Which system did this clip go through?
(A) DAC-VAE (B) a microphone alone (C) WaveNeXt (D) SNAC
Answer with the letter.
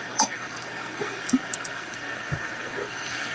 D